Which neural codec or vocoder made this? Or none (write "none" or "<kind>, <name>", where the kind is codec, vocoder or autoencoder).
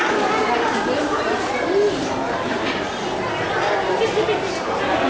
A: none